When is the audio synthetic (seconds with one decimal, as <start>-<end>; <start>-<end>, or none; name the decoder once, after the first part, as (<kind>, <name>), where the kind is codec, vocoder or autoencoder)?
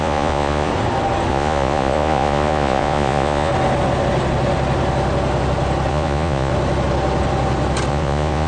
0.0-0.7 (vocoder, Vocos); 1.3-3.5; 5.9-6.5; 7.9-8.5